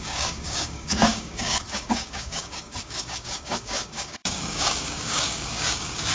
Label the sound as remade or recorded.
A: remade